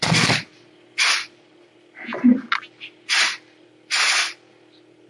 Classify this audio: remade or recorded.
recorded